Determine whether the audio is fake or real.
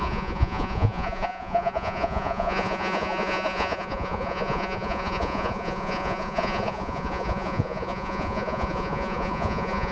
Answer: fake